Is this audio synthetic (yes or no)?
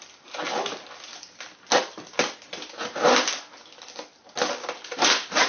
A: no